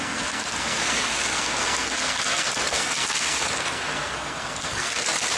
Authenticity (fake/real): fake